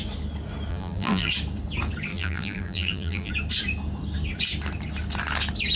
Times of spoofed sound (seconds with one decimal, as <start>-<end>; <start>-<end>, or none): 0.7-1.3; 2.1-3.3